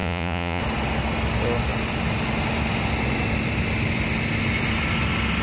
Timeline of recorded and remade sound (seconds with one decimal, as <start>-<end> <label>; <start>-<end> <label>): 0.0-0.6 remade; 0.6-5.4 recorded